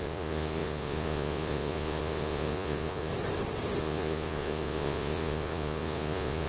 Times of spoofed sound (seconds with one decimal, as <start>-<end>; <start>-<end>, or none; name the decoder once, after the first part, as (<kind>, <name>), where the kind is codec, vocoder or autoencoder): 0.0-3.1 (vocoder, Vocos); 3.8-6.5